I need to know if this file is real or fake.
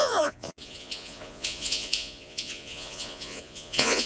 fake